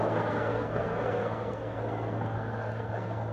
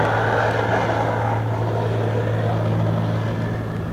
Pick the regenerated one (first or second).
first